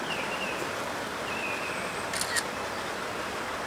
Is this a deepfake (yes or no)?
no